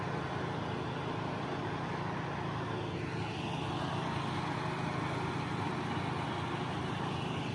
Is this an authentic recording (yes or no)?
yes